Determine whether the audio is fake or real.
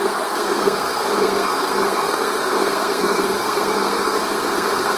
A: fake